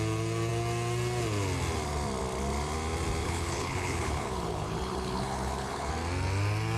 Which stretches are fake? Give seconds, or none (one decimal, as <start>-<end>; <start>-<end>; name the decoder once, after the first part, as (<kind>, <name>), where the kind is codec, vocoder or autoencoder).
3.2-5.9 (codec, HILCodec)